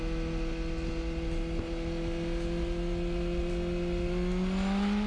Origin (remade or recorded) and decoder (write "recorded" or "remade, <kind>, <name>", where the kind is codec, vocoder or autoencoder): recorded